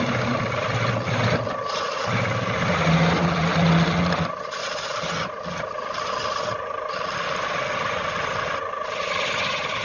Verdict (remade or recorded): recorded